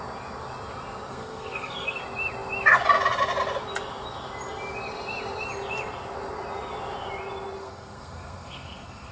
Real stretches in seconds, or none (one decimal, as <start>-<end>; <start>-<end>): 0.0-1.1; 2.0-7.6